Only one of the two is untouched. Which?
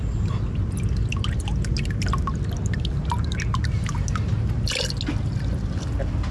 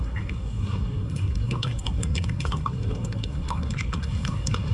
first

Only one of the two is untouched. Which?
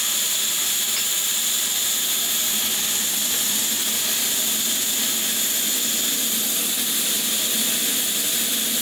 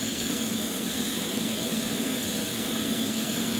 first